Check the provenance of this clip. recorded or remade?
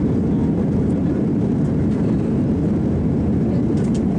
remade